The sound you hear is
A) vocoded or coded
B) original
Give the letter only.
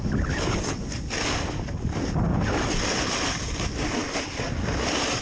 B